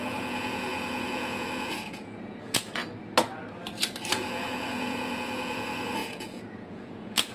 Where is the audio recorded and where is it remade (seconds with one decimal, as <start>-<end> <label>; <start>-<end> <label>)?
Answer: 0.0-2.8 remade; 2.8-4.1 recorded; 4.1-7.3 remade

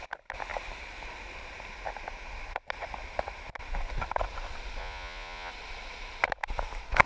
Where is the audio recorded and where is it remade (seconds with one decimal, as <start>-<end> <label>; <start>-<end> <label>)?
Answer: 0.0-4.8 recorded; 4.8-5.5 remade; 5.5-7.1 recorded

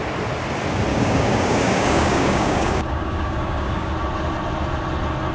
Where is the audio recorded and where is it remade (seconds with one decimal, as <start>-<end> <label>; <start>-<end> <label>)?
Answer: 0.0-0.9 recorded; 0.9-3.9 remade; 3.9-5.3 recorded

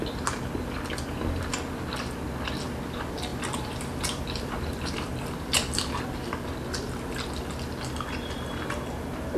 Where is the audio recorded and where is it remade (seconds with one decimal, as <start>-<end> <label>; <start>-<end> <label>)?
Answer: 0.0-3.3 recorded; 3.3-6.0 remade; 6.0-9.4 recorded

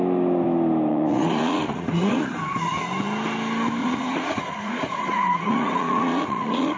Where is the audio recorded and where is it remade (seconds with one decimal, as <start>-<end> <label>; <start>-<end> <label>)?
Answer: 0.0-0.9 recorded; 0.9-2.3 remade; 2.3-3.8 recorded; 3.8-6.8 remade

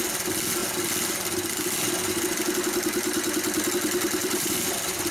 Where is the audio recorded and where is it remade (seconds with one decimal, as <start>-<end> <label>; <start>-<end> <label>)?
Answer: 0.0-4.2 recorded; 4.2-5.1 remade

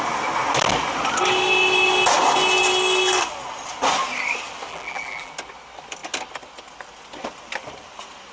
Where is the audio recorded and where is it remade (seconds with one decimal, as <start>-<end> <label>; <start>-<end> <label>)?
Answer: 0.0-4.7 recorded; 4.7-5.3 remade; 5.3-8.3 recorded

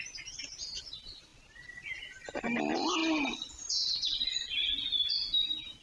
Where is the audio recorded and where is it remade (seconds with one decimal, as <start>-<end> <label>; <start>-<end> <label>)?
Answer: 0.0-5.8 recorded